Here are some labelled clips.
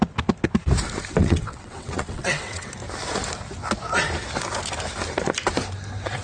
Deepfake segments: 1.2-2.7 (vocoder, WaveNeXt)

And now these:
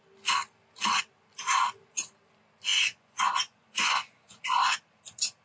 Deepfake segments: 2.7-4.4 (vocoder, Vocos)

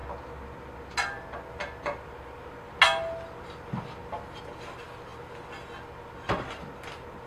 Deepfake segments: none

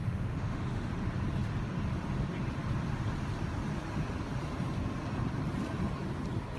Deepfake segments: 0.0-0.9 (autoencoder, DAC-VAE)